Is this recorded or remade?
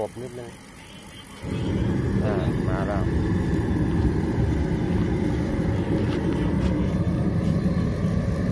recorded